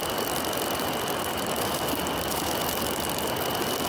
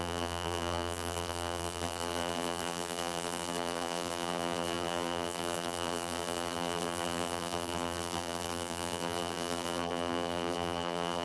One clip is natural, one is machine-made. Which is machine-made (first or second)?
second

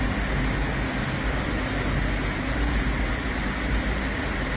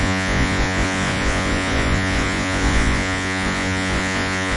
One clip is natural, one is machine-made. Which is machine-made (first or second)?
second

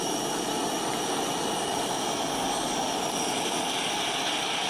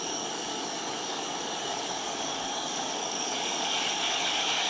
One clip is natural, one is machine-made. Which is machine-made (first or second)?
second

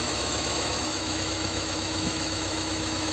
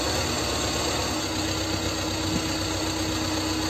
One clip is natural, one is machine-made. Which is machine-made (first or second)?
first